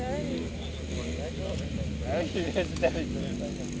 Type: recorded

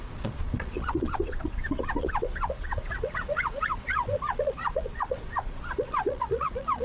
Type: remade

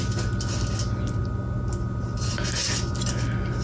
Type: recorded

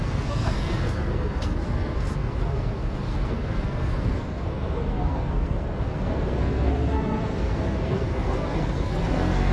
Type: remade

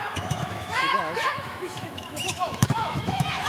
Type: remade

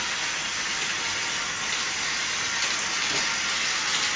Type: recorded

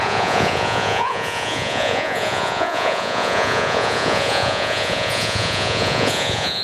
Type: remade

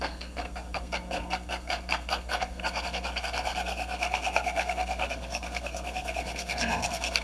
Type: remade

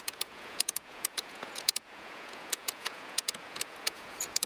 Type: remade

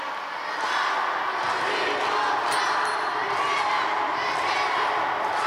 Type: recorded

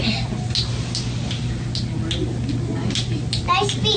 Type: recorded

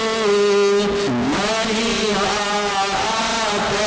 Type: recorded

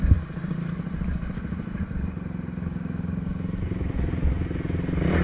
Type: recorded